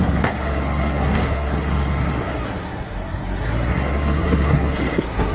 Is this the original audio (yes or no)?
no